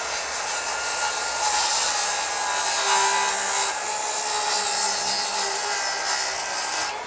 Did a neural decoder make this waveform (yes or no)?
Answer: no